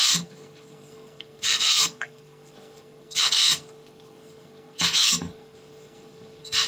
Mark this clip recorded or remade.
remade